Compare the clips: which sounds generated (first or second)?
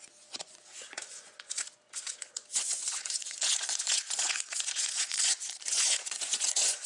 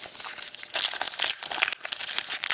first